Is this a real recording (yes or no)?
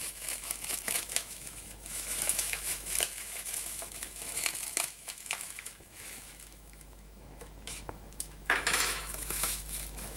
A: no